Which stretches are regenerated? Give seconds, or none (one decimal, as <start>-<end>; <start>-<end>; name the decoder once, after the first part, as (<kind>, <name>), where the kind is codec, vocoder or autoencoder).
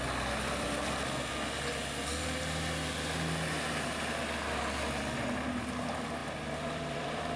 6.2-7.4 (vocoder, BigVGAN v2)